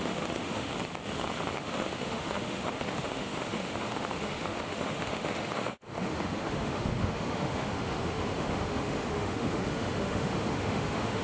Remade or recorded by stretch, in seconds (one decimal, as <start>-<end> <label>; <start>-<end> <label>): 0.0-0.7 remade; 0.7-1.6 recorded; 1.6-11.2 remade